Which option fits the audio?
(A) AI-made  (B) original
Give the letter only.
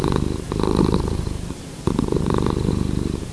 A